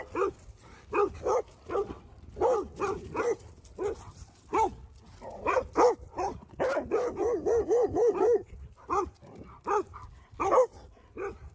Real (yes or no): yes